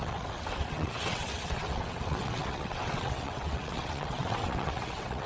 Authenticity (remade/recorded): remade